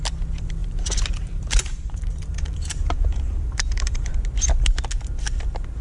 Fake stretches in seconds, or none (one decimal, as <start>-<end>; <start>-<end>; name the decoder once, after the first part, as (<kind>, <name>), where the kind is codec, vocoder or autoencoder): 0.6-4.1 (vocoder, BigVGAN v2)